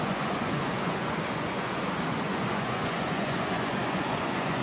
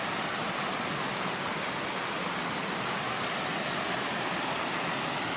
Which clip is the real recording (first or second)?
second